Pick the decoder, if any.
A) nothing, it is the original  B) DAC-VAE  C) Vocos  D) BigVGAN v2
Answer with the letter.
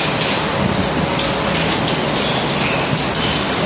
A